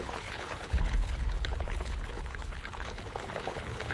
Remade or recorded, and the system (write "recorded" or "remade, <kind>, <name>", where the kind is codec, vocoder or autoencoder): remade, codec, HILCodec